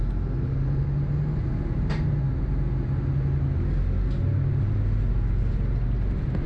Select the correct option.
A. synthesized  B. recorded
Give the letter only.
B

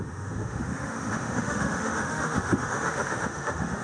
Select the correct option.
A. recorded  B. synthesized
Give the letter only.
B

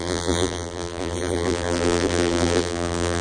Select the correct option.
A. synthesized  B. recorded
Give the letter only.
A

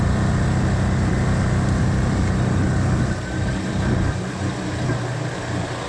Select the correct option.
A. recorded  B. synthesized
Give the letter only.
A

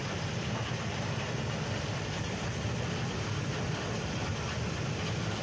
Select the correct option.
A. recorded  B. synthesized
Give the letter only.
A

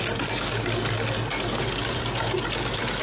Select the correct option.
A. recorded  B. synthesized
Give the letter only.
A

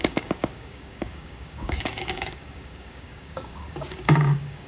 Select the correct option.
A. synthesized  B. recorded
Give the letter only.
A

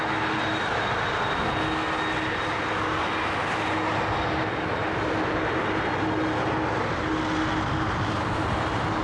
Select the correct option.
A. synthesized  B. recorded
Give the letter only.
B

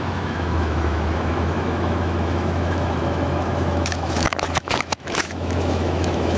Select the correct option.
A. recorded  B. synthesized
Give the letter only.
B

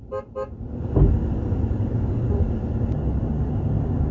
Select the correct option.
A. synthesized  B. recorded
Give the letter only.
B